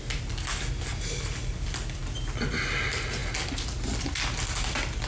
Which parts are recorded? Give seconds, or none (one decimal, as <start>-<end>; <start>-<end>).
0.0-5.1